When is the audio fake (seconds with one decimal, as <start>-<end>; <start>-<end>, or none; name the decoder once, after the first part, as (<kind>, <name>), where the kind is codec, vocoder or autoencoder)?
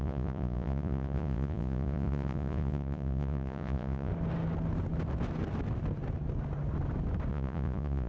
0.0-4.1 (vocoder, Vocos); 7.3-8.1